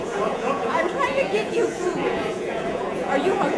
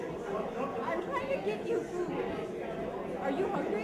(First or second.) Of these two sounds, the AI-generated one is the first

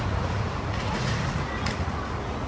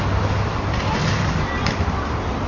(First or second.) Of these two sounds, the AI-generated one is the first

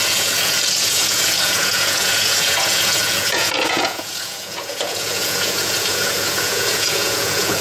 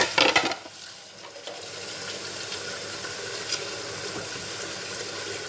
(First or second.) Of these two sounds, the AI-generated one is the first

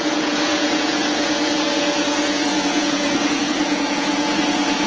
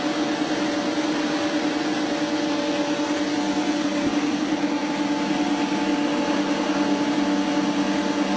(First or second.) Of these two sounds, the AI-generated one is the first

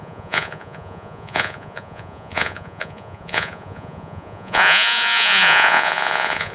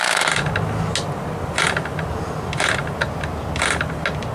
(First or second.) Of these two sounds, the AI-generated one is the first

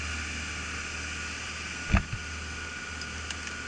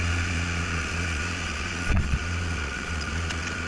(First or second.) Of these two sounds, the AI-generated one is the second